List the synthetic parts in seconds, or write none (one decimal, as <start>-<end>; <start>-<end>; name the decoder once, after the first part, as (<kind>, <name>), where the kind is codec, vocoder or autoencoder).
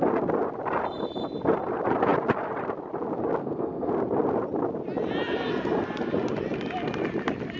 3.4-3.9 (codec, SNAC)